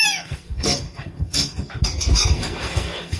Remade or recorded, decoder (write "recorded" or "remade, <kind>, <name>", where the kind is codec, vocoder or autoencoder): remade, codec, SNAC